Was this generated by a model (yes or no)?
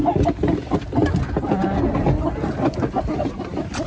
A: no